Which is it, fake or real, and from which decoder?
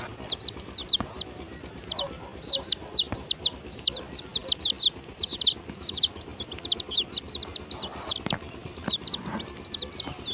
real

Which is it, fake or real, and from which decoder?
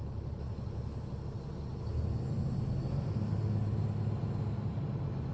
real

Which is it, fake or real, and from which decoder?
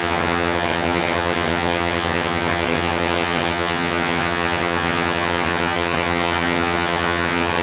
fake, vocoder, HiFi-GAN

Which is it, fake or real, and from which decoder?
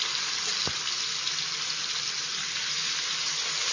real